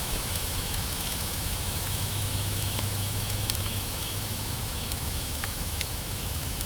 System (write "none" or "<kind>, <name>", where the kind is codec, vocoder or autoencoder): autoencoder, DAC-VAE